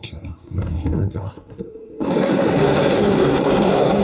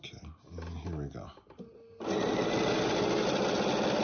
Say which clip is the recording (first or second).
second